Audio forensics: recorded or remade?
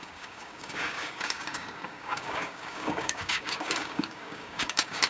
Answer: remade